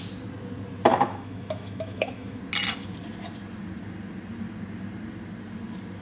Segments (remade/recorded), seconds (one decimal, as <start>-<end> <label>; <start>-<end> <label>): 0.0-0.9 recorded; 0.9-2.4 remade; 2.4-6.0 recorded